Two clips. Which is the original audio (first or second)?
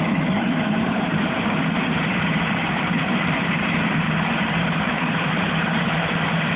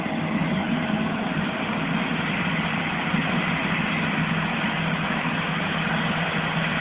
second